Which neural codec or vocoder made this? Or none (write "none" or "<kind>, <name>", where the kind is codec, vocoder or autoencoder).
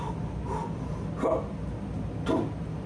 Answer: none